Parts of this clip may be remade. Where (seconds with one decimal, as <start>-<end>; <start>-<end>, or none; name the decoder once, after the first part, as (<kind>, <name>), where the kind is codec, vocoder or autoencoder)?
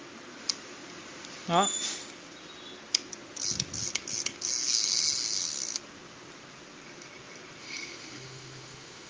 7.6-9.1 (autoencoder, DAC-VAE)